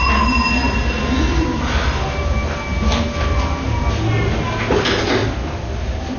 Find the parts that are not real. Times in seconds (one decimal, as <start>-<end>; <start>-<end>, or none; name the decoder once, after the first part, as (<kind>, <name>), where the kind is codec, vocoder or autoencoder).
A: none